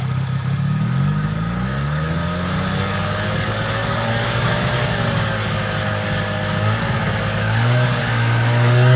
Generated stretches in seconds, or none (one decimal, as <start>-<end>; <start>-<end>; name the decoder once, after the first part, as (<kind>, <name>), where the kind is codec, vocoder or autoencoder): 0.0-9.0 (codec, DAC)